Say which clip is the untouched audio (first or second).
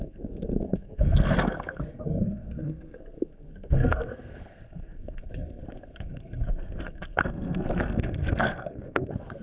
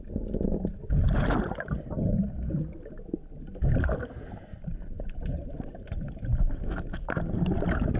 second